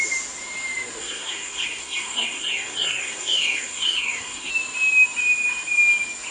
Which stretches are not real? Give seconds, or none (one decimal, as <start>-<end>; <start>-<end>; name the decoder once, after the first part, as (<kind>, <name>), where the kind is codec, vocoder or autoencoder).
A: 1.0-4.5 (codec, SNAC)

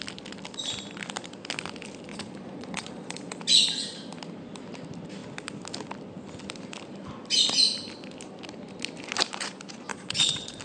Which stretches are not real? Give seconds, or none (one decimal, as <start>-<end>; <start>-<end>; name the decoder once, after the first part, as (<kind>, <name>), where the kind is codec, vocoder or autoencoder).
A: 2.1-3.4 (vocoder, Vocos); 9.9-10.6

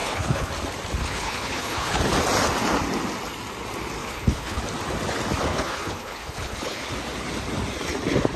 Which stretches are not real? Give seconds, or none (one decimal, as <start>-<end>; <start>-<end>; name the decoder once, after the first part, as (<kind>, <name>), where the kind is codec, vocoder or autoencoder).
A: 0.0-0.5 (codec, HILCodec); 1.0-2.0; 4.0-4.6; 5.5-6.9

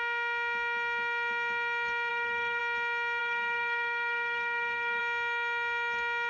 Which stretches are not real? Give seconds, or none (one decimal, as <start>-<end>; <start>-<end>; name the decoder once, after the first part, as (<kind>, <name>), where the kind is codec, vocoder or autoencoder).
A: 2.1-2.6 (codec, SNAC); 3.2-5.0